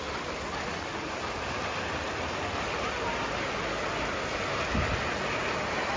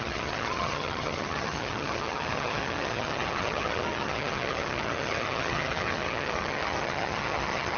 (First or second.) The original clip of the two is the first